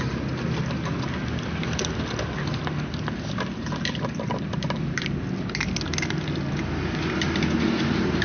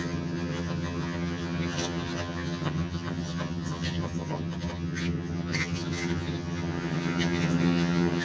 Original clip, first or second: first